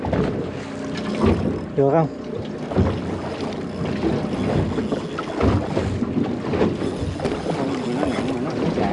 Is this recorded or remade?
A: recorded